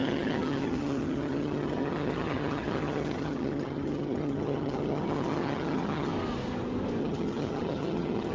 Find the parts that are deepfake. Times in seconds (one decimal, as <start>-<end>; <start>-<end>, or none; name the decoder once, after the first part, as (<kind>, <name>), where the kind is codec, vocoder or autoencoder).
0.0-6.1 (vocoder, HiFi-GAN); 7.0-8.3